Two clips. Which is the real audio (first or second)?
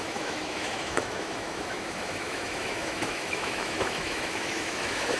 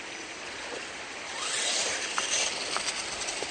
second